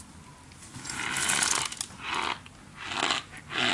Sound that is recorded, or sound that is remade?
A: recorded